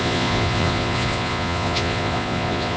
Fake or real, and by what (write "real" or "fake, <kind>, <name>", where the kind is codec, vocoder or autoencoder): fake, vocoder, Vocos